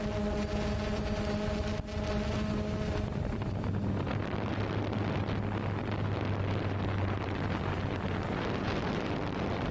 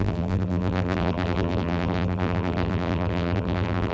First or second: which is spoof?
second